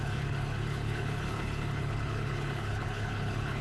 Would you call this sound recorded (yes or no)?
no